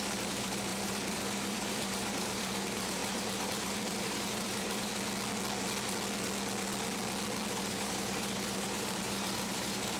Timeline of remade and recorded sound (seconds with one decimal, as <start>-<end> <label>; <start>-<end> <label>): 0.0-4.9 remade; 4.9-7.5 recorded; 7.5-10.0 remade